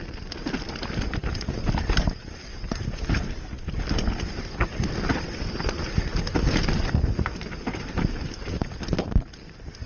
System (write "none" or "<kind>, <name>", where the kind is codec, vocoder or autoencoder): none